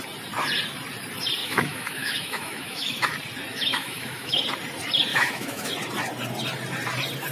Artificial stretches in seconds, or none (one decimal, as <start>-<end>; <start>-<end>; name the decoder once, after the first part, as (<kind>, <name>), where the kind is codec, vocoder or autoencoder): 1.4-3.1 (autoencoder, DAC-VAE); 3.5-4.4; 5.1-5.7